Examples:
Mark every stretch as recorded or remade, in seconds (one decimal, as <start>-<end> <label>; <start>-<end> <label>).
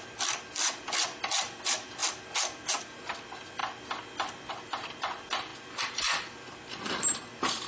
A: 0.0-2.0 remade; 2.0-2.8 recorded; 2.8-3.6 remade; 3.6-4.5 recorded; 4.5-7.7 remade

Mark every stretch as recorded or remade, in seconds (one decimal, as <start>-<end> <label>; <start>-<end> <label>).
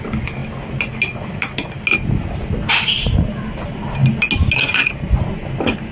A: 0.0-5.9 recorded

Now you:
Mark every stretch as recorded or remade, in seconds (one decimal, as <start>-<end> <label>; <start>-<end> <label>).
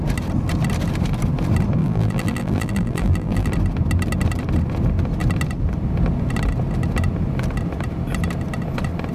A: 0.0-1.8 recorded; 1.8-3.5 remade; 3.5-9.1 recorded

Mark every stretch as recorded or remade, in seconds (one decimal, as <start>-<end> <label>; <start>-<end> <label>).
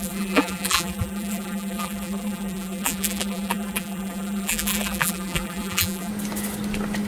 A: 0.0-6.1 remade; 6.1-7.1 recorded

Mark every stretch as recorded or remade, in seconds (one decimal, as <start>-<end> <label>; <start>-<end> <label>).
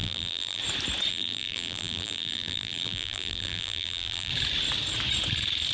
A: 0.0-0.6 remade; 0.6-1.1 recorded; 1.1-4.3 remade; 4.3-5.7 recorded